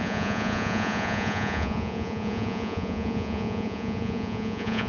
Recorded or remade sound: remade